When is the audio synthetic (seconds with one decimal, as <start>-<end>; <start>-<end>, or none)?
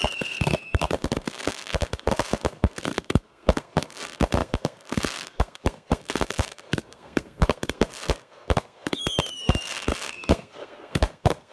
0.0-11.5